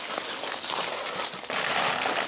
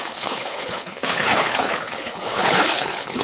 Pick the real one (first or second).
first